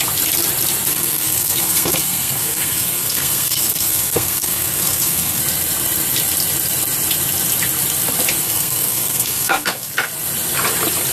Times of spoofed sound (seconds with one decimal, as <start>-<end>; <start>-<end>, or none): 0.9-5.4; 8.4-9.9